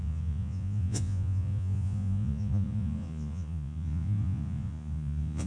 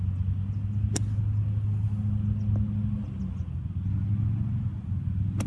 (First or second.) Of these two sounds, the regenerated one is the first